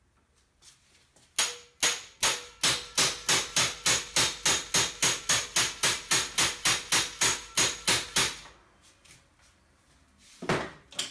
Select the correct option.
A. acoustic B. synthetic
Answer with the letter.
A